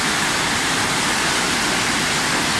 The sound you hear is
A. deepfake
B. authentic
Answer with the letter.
B